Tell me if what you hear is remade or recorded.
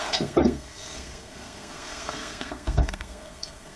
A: remade